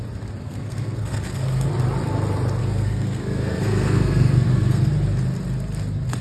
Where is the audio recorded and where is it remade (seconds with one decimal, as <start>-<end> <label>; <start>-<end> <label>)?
0.0-0.4 recorded; 0.4-1.7 remade; 1.7-2.6 recorded; 2.6-4.9 remade; 4.9-6.2 recorded